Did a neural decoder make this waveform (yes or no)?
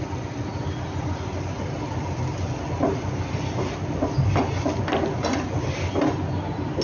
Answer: no